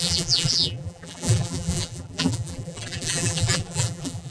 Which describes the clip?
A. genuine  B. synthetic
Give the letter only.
B